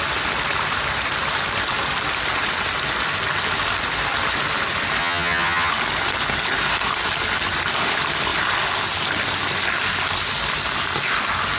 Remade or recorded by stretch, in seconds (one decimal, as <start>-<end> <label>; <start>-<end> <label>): 0.0-5.0 recorded; 5.0-5.7 remade; 5.7-11.6 recorded